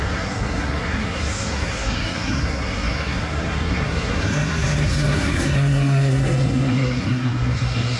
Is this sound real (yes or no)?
no